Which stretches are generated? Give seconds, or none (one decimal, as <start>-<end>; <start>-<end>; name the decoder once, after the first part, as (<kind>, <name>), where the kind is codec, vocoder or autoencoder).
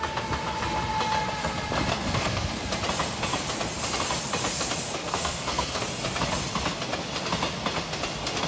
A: 1.9-2.5 (codec, SNAC); 5.0-5.8